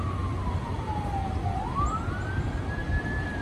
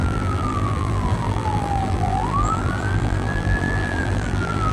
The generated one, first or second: second